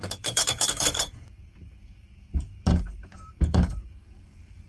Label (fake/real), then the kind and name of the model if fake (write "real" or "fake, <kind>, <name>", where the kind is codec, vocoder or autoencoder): fake, codec, DAC